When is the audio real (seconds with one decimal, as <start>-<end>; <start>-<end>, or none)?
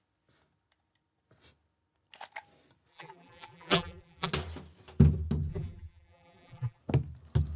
0.0-2.9; 4.3-5.5; 6.8-7.6